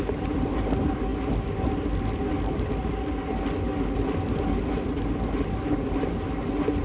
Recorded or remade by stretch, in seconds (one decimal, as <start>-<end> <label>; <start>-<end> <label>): 0.0-6.8 recorded